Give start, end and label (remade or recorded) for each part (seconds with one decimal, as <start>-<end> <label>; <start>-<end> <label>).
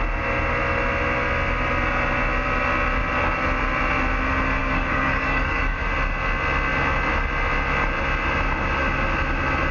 0.0-4.6 recorded; 4.6-5.8 remade; 5.8-9.7 recorded